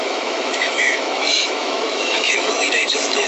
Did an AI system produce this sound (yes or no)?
yes